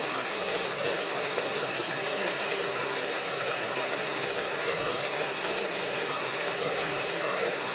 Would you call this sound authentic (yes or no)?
no